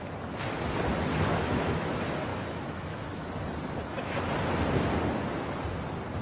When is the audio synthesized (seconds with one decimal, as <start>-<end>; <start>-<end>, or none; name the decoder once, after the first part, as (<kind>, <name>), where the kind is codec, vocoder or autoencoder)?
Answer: 1.3-1.9 (autoencoder, DAC-VAE); 2.3-3.3